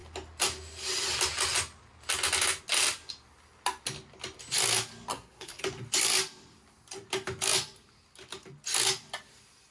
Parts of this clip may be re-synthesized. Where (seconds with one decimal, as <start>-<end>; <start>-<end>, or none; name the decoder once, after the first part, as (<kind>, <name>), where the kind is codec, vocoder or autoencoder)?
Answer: 5.1-5.6 (codec, SNAC)

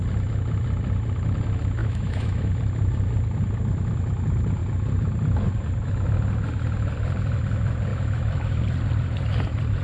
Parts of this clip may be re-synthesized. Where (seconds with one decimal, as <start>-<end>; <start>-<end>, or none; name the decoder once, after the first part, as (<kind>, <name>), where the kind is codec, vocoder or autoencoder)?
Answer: 1.8-2.5 (autoencoder, DAC-VAE); 7.9-8.6

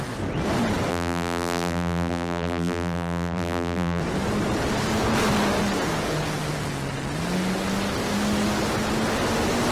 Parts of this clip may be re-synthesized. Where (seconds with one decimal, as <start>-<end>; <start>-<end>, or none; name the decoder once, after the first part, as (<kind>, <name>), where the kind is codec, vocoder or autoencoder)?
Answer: 0.9-4.0 (vocoder, BigVGAN v2)

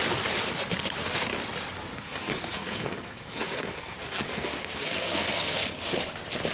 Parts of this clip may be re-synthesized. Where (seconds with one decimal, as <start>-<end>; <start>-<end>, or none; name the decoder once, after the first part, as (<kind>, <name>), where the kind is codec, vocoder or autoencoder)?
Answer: 1.9-5.8 (codec, SNAC)